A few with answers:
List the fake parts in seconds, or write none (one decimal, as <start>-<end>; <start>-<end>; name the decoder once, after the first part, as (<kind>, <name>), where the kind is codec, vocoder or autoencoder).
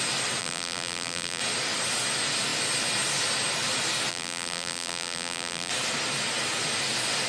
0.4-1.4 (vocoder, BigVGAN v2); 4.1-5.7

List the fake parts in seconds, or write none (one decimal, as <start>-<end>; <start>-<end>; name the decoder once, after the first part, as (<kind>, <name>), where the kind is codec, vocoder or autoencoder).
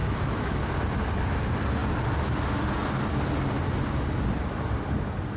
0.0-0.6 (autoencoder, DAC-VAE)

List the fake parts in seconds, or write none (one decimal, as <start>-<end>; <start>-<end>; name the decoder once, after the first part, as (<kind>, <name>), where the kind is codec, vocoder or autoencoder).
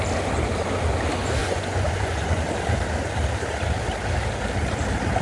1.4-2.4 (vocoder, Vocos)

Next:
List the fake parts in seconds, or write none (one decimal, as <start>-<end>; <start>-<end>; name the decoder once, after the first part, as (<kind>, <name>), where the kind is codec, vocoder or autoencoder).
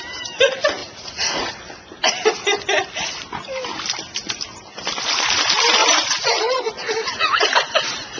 0.8-1.5 (vocoder, Vocos); 5.8-7.4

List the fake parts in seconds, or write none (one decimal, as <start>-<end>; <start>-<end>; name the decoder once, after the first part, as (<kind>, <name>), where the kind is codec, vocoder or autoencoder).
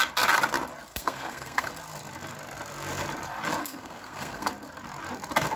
0.9-1.7 (codec, SNAC); 3.6-4.5